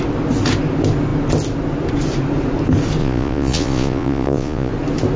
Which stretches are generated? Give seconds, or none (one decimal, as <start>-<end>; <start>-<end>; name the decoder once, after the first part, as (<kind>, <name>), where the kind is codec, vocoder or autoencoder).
3.0-4.7 (vocoder, Vocos)